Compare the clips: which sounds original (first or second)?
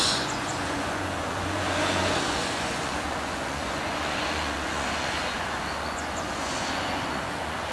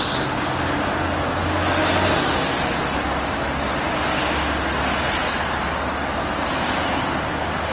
second